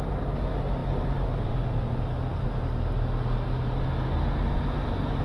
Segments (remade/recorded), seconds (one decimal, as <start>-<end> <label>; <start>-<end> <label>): 0.0-5.2 recorded